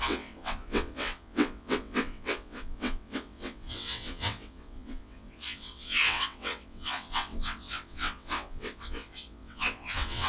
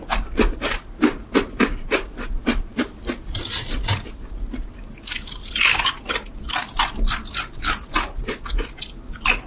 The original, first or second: second